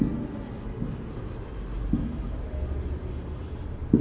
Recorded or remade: recorded